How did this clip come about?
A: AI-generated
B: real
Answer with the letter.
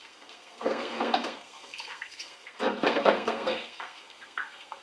A